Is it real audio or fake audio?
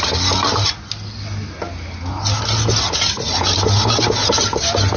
real